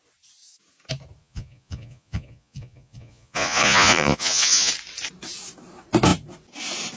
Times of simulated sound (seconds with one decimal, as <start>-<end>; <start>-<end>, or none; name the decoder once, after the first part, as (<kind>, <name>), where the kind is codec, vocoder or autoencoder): 1.2-4.7 (vocoder, Vocos)